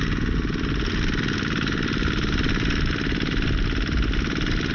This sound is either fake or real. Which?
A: real